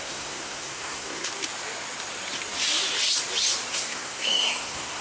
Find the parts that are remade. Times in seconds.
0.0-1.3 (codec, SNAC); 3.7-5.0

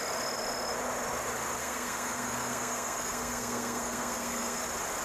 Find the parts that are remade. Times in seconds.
1.6-4.6 (codec, SNAC)

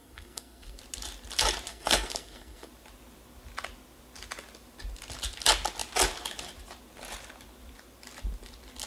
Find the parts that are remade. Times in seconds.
0.0-0.8 (codec, SNAC); 1.7-2.7

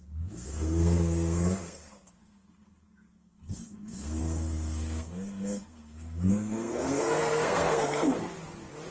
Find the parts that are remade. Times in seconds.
0.0-8.2 (codec, SNAC)

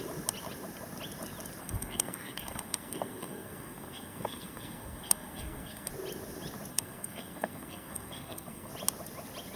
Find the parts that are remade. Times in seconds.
1.6-5.9 (codec, SNAC); 6.7-8.7

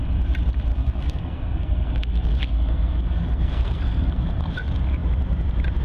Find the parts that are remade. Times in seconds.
0.7-4.2 (codec, SNAC)

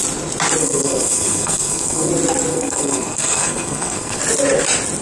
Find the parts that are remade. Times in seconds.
0.6-2.1 (codec, SNAC); 2.5-4.2

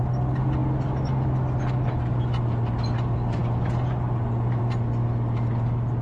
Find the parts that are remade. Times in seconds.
none